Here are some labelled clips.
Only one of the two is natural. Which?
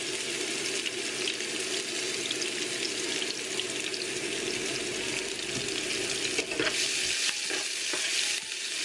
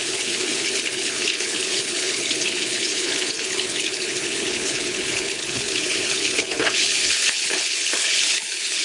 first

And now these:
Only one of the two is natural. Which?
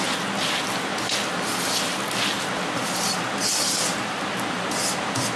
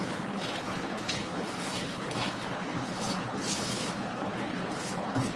first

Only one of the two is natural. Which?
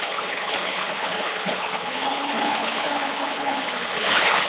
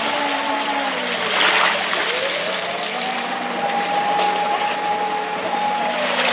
second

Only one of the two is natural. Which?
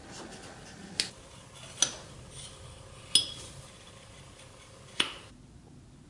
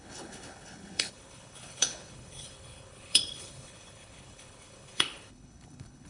first